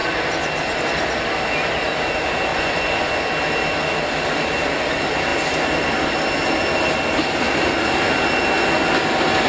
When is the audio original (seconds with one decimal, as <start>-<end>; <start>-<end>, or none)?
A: 0.0-2.5; 3.2-9.5